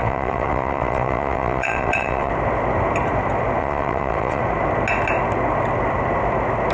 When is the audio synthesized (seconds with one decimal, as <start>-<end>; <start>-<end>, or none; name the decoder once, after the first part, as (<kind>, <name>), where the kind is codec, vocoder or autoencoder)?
0.0-2.3 (vocoder, WaveNeXt); 3.6-4.4